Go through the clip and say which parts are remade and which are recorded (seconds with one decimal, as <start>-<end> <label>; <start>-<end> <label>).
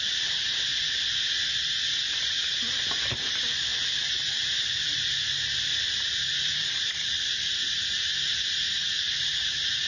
0.0-0.7 remade; 0.7-2.9 recorded; 2.9-9.9 remade